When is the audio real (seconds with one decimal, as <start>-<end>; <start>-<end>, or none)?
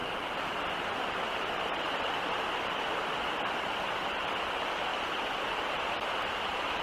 0.0-6.8